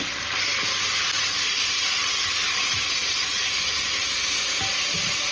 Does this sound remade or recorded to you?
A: recorded